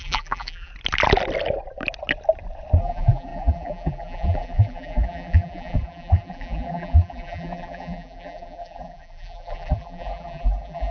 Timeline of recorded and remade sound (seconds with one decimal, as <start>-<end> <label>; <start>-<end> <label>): 0.0-0.7 remade; 0.7-2.8 recorded; 2.8-10.9 remade